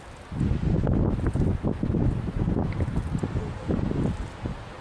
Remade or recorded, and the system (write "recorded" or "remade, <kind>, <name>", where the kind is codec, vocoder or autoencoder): recorded